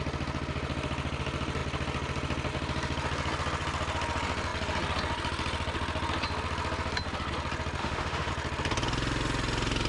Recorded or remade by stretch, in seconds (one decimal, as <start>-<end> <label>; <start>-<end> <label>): 0.0-7.8 recorded; 7.8-8.3 remade; 8.3-9.9 recorded